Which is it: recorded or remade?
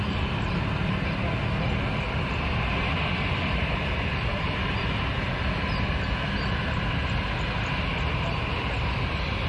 recorded